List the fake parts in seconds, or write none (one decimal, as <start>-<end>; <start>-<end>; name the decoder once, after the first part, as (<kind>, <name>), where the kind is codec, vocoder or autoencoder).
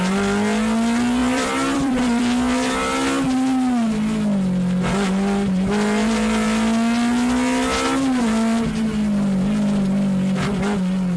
1.2-2.2 (vocoder, BigVGAN v2)